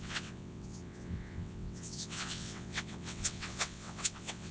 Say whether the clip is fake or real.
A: fake